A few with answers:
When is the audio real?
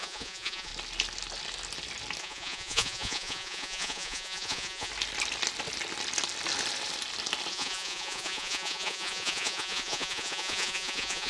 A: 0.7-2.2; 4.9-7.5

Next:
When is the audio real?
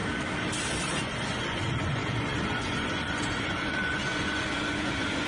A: 0.0-1.0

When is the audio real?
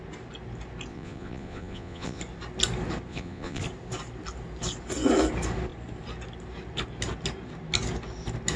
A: 0.0-0.9; 2.2-3.1; 3.6-8.6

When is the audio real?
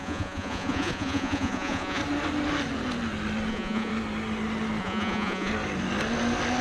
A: 2.0-3.5; 3.9-4.8; 5.5-6.6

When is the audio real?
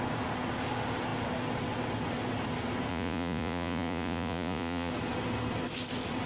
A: 0.0-2.9; 4.9-6.3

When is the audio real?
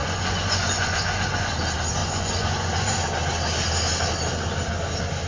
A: 1.5-2.0; 3.0-5.3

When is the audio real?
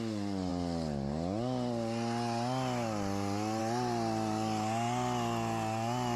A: 0.0-6.2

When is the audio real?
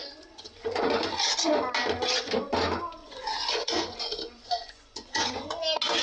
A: 1.1-3.0; 5.6-6.0